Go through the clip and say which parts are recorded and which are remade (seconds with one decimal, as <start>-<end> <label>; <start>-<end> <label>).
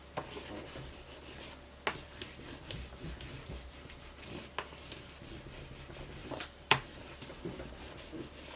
0.0-6.2 recorded; 6.2-7.0 remade; 7.0-8.6 recorded